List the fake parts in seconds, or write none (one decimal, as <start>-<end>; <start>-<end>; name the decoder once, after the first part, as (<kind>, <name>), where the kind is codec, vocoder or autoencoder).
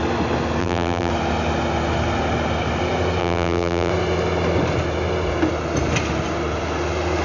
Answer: 0.6-1.1 (vocoder, BigVGAN v2); 3.2-3.9